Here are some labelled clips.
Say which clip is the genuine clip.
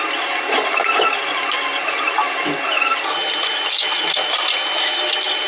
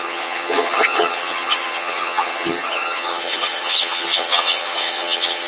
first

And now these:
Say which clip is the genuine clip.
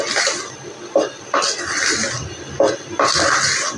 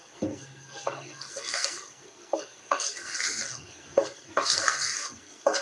first